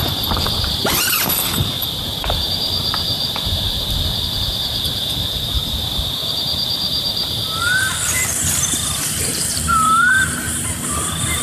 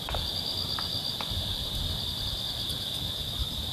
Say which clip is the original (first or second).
second